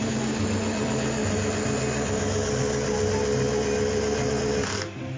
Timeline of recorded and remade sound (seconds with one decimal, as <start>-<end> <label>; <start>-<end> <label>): 0.0-5.2 recorded